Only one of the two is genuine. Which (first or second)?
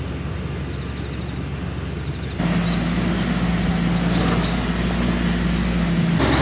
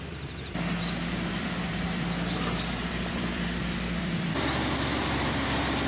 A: first